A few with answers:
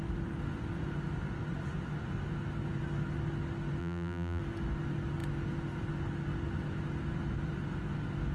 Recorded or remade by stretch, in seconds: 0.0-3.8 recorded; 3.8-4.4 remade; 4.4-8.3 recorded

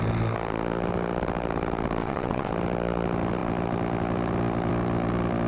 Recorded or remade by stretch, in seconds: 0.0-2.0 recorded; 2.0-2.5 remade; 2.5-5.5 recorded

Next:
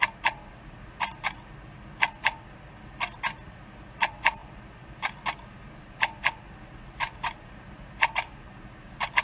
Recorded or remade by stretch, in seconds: 0.0-9.2 recorded

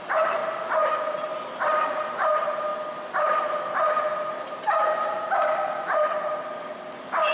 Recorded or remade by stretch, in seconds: 0.0-0.4 remade; 0.4-1.1 recorded; 1.1-2.7 remade; 2.7-4.3 recorded; 4.3-5.0 remade; 5.0-6.1 recorded; 6.1-7.3 remade